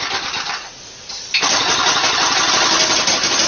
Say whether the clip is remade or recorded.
remade